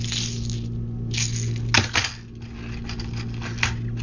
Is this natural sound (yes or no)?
yes